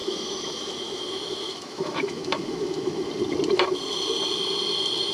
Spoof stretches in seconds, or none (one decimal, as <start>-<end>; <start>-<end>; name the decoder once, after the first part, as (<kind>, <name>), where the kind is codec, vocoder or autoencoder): 0.0-3.1 (autoencoder, DAC-VAE)